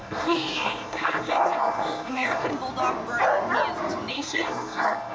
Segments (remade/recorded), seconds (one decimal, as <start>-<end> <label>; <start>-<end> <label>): 0.0-2.5 remade; 2.5-4.1 recorded; 4.1-5.1 remade